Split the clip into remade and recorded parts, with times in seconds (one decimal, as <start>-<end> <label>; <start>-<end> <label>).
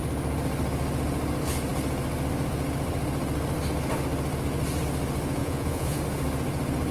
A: 0.0-5.4 recorded; 5.4-6.0 remade; 6.0-6.9 recorded